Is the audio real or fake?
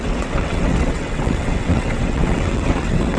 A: fake